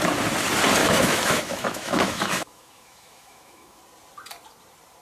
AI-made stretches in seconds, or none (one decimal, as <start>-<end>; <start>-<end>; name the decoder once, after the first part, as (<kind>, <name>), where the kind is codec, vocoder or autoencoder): 0.8-3.8 (autoencoder, DAC-VAE)